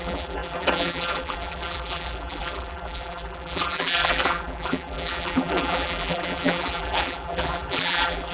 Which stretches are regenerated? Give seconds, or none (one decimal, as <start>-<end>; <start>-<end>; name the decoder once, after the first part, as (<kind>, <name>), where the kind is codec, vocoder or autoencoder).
0.0-8.3 (vocoder, BigVGAN v2)